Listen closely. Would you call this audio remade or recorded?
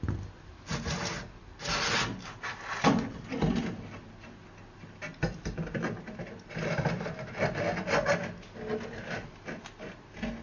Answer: recorded